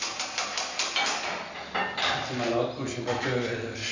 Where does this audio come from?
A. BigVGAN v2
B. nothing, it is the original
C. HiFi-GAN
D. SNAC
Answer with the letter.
B